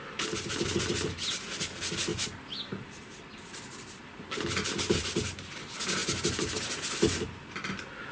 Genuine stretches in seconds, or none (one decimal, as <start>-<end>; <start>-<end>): 0.0-8.1